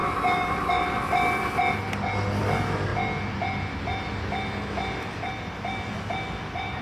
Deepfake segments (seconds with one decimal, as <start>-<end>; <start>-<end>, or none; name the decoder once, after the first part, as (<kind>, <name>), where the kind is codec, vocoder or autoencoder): 0.0-0.7 (autoencoder, DAC-VAE)